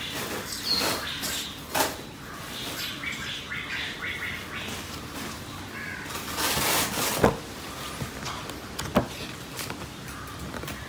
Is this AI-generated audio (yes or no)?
no